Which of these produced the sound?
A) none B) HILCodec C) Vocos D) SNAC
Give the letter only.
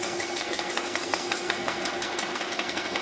D